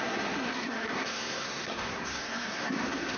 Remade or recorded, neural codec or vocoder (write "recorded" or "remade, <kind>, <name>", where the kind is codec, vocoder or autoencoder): remade, codec, SNAC